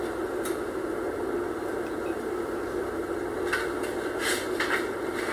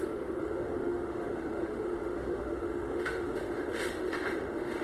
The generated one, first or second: second